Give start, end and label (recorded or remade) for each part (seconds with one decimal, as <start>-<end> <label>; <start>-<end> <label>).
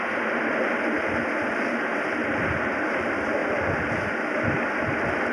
0.0-5.3 recorded